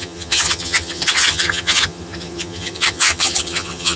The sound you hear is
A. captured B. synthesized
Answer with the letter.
B